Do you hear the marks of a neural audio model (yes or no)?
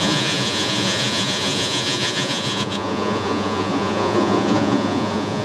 yes